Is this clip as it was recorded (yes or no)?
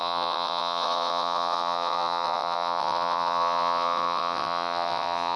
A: no